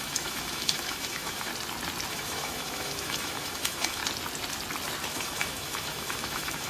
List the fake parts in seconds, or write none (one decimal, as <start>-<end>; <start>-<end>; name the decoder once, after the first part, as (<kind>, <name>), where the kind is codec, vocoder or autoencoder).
0.0-1.5 (autoencoder, DAC-VAE); 2.1-4.0; 5.1-6.7